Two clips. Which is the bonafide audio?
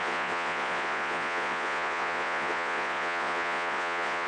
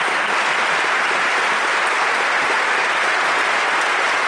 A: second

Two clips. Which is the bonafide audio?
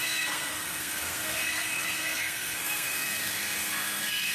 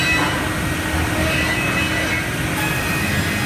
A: second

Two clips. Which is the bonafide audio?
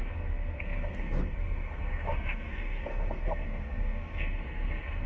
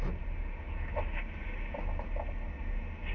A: second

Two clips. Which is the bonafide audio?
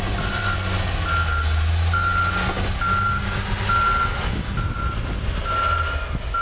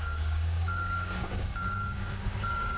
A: first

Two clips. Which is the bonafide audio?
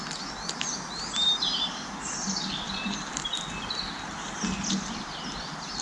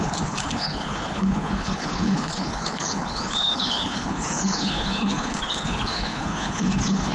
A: first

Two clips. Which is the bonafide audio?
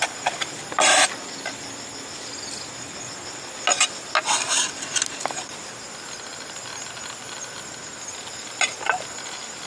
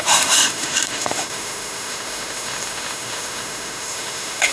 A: first